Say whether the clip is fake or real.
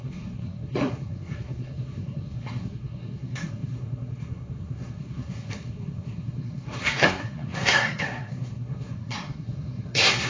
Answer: fake